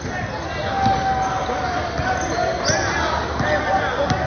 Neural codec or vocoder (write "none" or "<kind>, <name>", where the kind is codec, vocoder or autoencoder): none